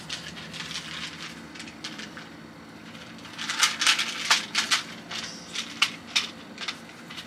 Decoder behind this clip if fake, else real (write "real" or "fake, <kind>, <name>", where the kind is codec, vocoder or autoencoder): real